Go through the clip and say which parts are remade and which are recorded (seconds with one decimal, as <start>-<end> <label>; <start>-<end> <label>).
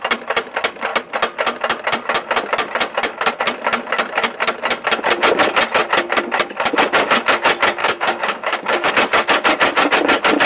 0.0-7.8 recorded; 7.8-8.9 remade; 8.9-10.5 recorded